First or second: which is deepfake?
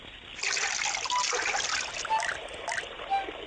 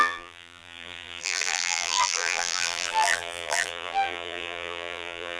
second